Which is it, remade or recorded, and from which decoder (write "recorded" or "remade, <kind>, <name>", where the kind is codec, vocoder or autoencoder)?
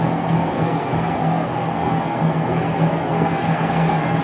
remade, codec, SNAC